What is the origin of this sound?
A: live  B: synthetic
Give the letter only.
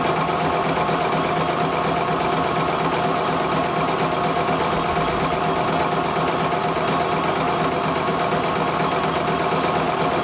A